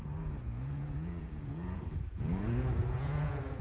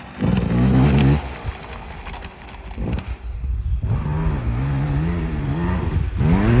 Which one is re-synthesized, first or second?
first